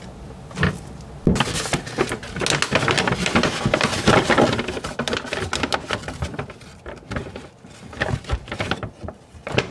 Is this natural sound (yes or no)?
yes